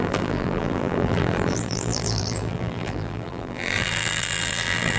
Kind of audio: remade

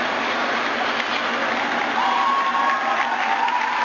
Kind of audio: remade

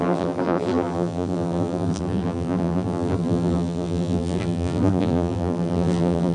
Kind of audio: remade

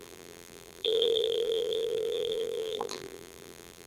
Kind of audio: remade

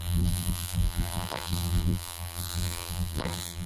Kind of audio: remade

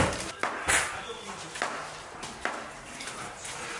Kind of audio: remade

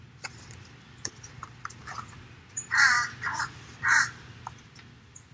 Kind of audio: remade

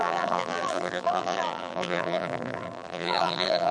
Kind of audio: remade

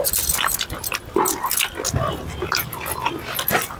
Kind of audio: recorded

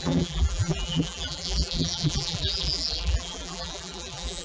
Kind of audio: remade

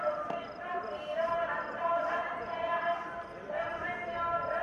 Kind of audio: recorded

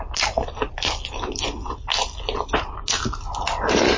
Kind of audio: recorded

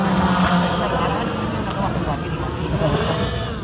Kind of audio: recorded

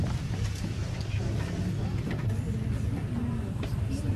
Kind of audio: recorded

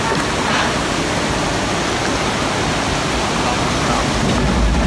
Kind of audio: recorded